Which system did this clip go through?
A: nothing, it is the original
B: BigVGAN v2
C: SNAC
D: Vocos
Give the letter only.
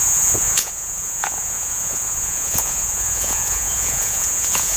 D